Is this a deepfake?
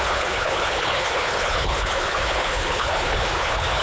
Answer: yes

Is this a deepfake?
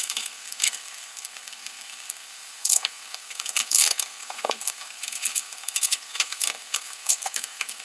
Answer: yes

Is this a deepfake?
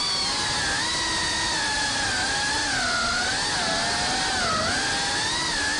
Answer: no